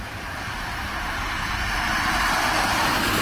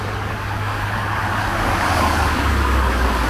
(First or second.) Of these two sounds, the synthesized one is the second